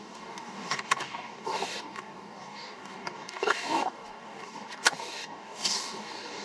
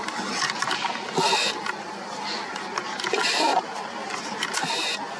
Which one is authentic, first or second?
second